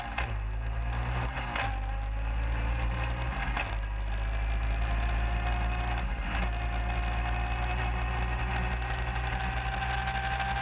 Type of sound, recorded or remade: recorded